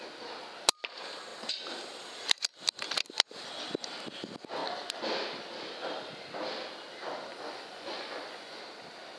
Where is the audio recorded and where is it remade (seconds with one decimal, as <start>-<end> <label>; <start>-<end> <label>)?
0.0-7.3 recorded; 7.3-8.6 remade; 8.6-9.2 recorded